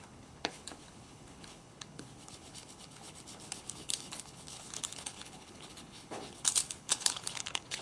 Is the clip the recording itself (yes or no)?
no